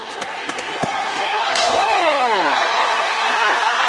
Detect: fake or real fake